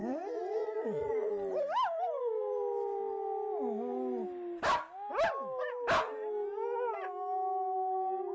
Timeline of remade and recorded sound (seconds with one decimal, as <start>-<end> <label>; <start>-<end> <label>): 0.0-1.3 remade; 1.3-8.3 recorded